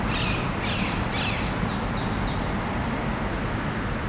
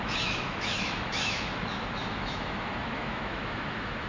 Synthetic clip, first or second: second